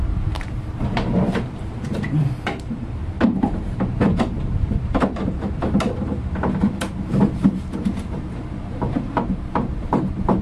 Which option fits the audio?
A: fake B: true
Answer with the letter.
A